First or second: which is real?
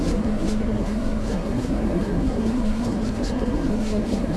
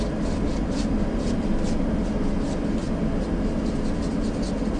second